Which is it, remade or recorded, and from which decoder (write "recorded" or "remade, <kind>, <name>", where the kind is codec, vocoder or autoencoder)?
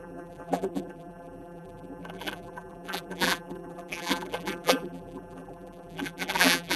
remade, vocoder, BigVGAN v2